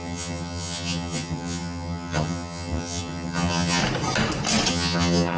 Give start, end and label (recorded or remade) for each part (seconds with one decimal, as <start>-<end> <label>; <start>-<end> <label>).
0.0-3.8 remade; 3.8-4.7 recorded; 4.7-5.4 remade

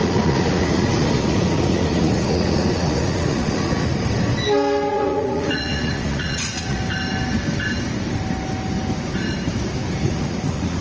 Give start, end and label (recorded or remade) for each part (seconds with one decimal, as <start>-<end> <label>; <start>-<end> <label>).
0.0-3.9 remade; 3.9-4.9 recorded; 4.9-6.8 remade; 6.8-10.0 recorded; 10.0-10.8 remade

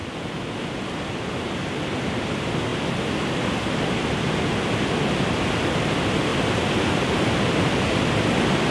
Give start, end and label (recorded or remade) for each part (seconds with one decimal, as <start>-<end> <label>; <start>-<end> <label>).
0.0-8.7 recorded